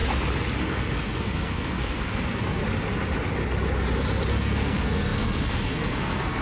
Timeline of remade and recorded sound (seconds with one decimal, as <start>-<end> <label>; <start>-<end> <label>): 0.0-0.6 recorded; 0.6-2.6 remade; 2.6-4.3 recorded; 4.3-6.4 remade